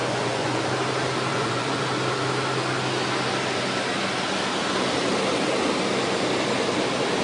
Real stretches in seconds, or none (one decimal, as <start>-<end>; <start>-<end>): 0.6-1.3; 1.8-7.2